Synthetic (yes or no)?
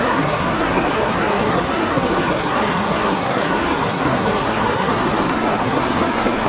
yes